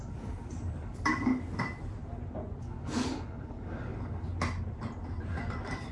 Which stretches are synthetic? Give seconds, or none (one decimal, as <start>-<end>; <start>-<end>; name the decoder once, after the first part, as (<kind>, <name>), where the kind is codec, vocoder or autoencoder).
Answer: 0.0-1.3 (codec, DAC); 2.6-4.3; 5.3-5.9